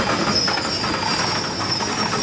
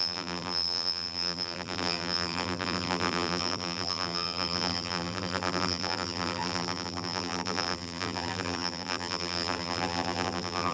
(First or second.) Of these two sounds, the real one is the first